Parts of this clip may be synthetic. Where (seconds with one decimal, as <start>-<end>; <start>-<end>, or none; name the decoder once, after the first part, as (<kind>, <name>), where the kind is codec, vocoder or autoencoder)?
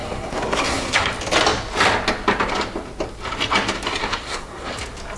0.0-1.1 (codec, SNAC); 4.0-4.7